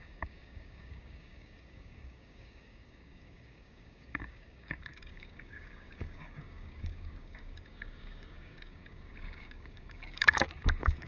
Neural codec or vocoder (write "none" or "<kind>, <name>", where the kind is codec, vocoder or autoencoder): codec, DAC